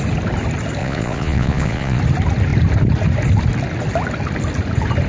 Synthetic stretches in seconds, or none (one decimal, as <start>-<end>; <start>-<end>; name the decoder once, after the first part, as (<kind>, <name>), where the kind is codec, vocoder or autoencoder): 0.8-2.0 (vocoder, Vocos)